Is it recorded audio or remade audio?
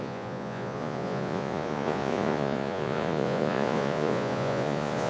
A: remade